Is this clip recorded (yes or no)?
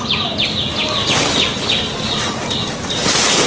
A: yes